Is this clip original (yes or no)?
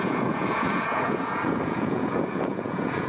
no